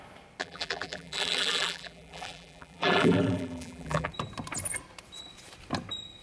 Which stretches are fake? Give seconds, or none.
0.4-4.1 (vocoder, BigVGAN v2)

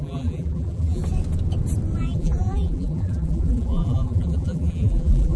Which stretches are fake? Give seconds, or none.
0.0-1.0 (vocoder, BigVGAN v2); 2.0-5.4

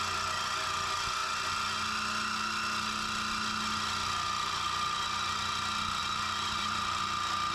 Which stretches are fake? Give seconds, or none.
6.0-7.0 (vocoder, BigVGAN v2)

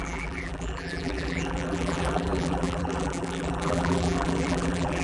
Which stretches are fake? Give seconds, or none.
0.0-5.0 (vocoder, BigVGAN v2)

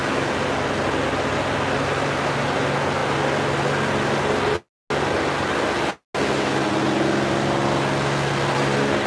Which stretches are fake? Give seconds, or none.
none

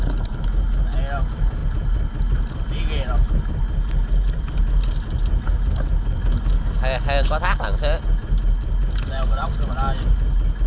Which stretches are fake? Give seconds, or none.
none